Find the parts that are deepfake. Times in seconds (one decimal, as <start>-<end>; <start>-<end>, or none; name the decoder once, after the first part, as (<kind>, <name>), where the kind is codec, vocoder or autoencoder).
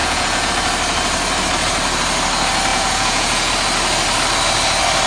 0.0-0.5 (vocoder, Vocos); 2.7-3.5